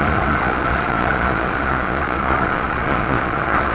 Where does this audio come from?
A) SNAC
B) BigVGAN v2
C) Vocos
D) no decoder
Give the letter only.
C